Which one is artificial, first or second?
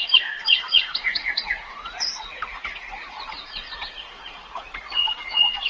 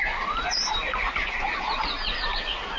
first